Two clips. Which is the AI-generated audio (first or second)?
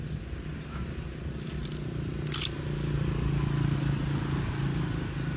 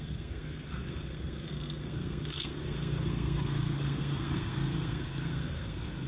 second